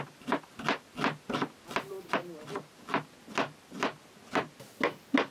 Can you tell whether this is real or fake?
real